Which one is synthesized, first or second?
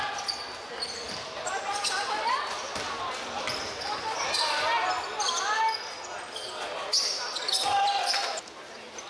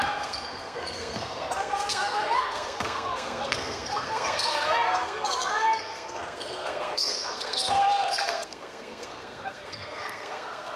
second